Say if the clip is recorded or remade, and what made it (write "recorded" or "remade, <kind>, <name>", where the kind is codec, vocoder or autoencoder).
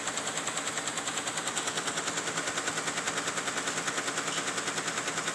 recorded